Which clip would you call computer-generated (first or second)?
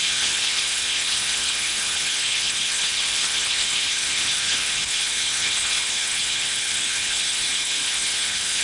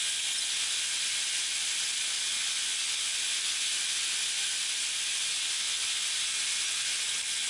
first